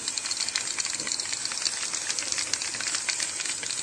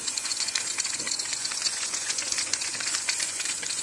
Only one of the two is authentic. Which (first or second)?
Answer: first